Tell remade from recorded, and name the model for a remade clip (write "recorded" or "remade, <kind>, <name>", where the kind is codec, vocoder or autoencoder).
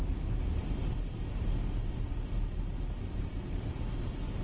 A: recorded